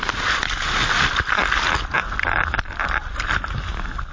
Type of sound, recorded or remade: recorded